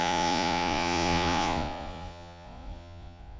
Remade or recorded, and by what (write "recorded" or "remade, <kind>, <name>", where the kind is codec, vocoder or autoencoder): remade, vocoder, Vocos